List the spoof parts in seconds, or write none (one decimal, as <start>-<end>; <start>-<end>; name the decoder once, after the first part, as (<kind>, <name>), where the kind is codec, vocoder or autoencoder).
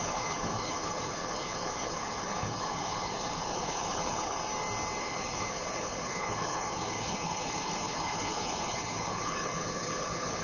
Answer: 0.0-4.4 (codec, HILCodec); 5.0-10.4